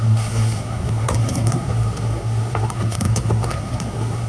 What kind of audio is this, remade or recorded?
remade